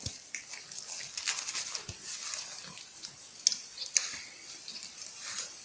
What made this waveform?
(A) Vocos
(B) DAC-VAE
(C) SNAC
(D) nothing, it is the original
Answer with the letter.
D